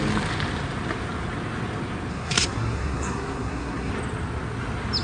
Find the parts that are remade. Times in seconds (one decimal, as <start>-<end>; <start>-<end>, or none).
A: 2.1-3.9